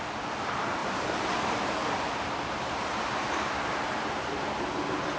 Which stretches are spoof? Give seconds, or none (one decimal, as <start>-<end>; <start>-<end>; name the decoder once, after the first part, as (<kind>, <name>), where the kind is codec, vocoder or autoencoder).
0.8-3.9 (vocoder, BigVGAN v2)

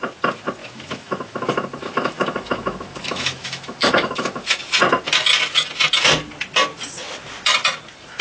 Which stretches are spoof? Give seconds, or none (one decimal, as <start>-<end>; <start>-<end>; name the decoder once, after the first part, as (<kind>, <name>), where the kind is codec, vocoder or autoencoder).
0.6-4.6 (autoencoder, DAC-VAE)